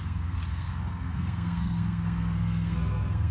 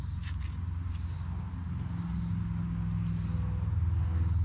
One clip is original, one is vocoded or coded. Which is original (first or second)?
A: second